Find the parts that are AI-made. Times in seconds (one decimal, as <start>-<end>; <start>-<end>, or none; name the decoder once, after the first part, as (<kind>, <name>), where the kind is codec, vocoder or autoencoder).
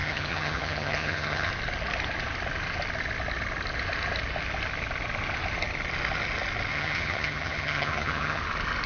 0.0-1.5 (vocoder, HiFi-GAN); 6.7-8.4